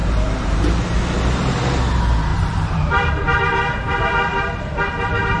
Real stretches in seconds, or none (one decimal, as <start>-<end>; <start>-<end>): 1.0-2.3; 3.1-4.3; 4.9-5.4